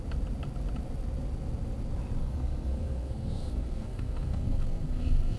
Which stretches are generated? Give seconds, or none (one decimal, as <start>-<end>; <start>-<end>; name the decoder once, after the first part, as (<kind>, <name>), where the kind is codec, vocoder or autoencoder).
2.2-5.4 (codec, SNAC)